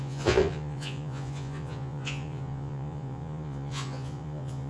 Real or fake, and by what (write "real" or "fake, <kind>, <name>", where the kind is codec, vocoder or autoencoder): fake, vocoder, Vocos